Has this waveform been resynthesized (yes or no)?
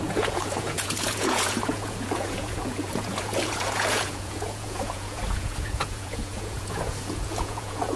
yes